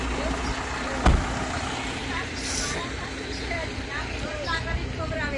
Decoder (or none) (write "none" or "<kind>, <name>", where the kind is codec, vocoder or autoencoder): none